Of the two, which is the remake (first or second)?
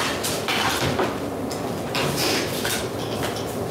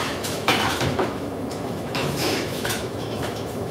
second